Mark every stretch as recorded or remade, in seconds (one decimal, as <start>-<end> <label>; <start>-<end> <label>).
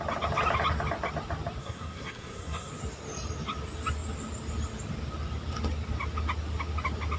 0.0-1.6 recorded; 1.6-2.7 remade; 2.7-7.2 recorded